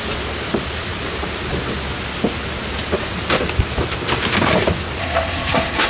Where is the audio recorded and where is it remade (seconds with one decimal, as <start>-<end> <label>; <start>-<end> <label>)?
0.0-5.0 recorded; 5.0-5.9 remade